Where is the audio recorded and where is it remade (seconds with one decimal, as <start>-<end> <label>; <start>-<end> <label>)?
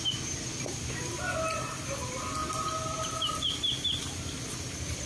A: 0.0-5.1 recorded